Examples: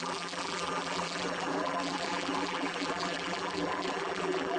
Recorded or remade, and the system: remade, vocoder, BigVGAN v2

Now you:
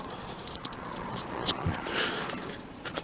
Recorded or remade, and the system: remade, vocoder, Vocos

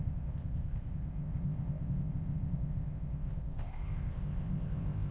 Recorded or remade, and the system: remade, codec, ZipCodec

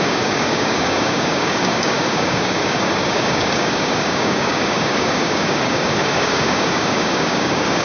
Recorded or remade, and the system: remade, codec, DAC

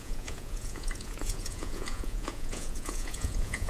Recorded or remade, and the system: remade, vocoder, Vocos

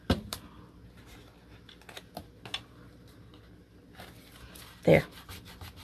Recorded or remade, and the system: recorded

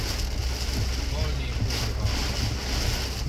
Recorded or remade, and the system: recorded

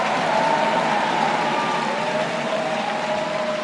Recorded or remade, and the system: recorded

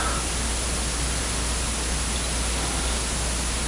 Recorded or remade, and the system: recorded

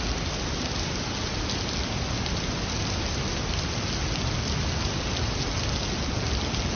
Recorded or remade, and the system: recorded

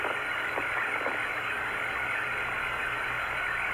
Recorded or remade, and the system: remade, codec, DAC